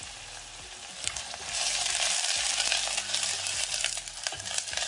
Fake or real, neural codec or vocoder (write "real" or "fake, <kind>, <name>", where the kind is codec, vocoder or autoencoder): real